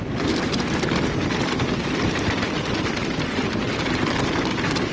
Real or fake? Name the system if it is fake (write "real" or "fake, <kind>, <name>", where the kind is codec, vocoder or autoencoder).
fake, vocoder, BigVGAN v2